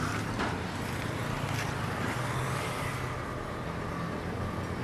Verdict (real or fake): real